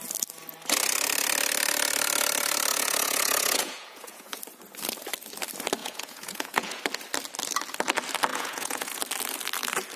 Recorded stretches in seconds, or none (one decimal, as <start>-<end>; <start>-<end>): 0.0-2.7; 4.4-5.8; 6.8-8.3; 9.0-10.0